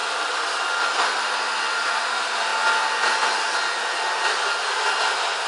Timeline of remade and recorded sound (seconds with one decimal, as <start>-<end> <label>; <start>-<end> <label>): 0.0-5.5 recorded